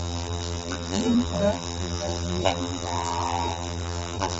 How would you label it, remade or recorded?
remade